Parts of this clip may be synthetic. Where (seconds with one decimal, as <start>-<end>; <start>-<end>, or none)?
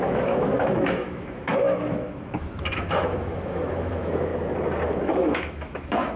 0.0-4.3; 5.0-6.2